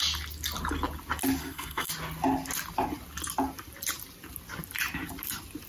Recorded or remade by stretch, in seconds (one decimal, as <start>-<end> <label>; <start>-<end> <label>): 0.0-1.4 recorded; 1.4-1.9 remade; 1.9-5.7 recorded